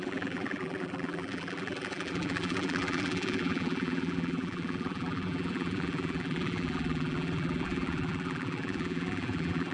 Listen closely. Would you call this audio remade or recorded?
remade